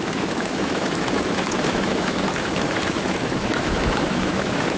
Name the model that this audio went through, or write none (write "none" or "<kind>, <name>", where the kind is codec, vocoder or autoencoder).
autoencoder, DAC-VAE